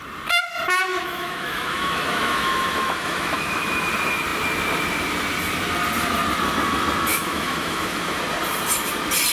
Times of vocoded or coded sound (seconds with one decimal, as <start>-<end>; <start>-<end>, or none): 0.9-3.9; 7.1-8.2